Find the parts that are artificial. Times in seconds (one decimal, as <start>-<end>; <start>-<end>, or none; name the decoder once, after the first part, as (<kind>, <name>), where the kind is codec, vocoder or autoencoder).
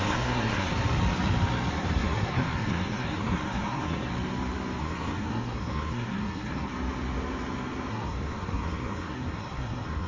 0.0-0.7 (codec, SNAC); 1.7-4.1; 4.8-6.7; 7.9-10.1